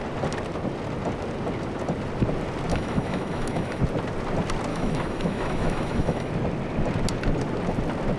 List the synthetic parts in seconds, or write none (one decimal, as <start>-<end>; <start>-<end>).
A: 2.7-3.8; 4.7-6.3